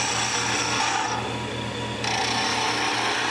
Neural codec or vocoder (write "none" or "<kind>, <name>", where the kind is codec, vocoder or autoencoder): none